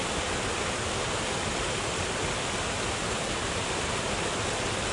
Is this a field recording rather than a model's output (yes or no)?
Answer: yes